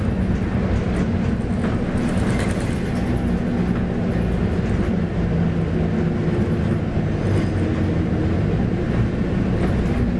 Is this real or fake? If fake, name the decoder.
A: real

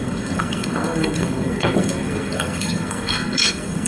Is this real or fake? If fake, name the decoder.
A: fake, codec, SNAC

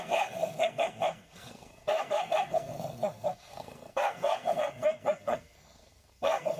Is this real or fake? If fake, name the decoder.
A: fake, codec, SNAC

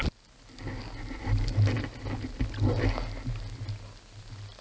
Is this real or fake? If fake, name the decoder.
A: real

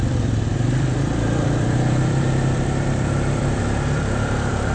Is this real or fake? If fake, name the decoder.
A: fake, vocoder, BigVGAN v2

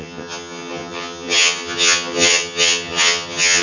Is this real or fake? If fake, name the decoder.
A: fake, vocoder, HiFi-GAN